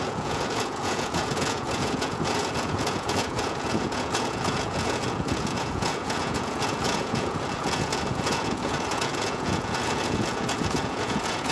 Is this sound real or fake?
fake